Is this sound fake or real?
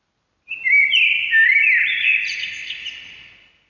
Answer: real